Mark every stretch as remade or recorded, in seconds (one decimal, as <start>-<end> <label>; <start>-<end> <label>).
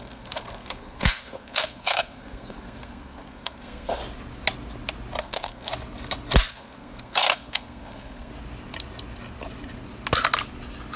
0.0-4.0 remade; 4.0-5.2 recorded; 5.2-5.7 remade; 5.7-6.5 recorded; 6.5-8.3 remade; 8.3-11.0 recorded